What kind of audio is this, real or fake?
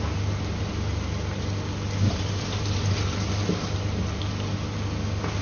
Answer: real